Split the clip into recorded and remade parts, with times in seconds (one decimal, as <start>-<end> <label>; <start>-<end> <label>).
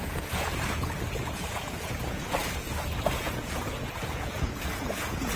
0.0-5.4 remade